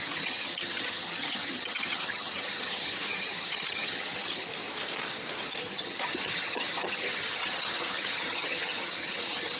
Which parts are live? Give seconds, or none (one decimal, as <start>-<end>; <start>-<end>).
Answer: 4.5-5.6